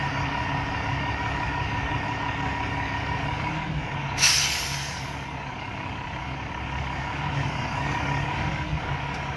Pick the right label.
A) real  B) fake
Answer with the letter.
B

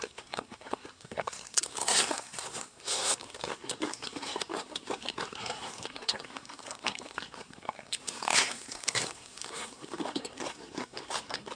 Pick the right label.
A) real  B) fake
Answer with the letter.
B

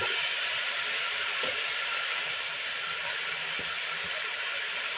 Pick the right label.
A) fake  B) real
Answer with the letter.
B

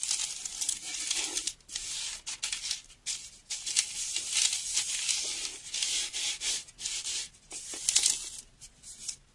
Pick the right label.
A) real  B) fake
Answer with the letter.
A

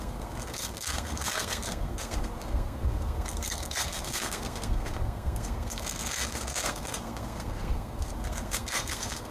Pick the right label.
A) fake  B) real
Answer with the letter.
A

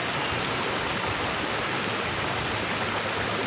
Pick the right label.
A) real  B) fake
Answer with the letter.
A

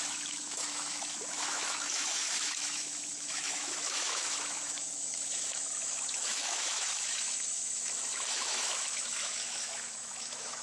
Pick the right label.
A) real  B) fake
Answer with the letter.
B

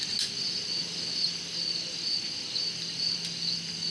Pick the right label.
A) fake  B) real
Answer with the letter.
B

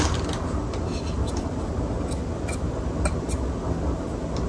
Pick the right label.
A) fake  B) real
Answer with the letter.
B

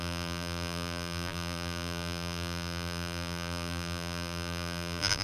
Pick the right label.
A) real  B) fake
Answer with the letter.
B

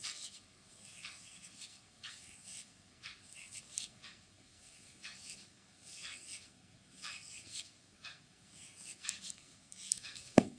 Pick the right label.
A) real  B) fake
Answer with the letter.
B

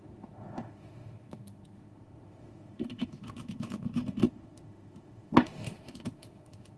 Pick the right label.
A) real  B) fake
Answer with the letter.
B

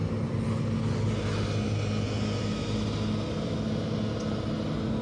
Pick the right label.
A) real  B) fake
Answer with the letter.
A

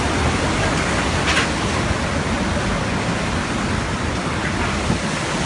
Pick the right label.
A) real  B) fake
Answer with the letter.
A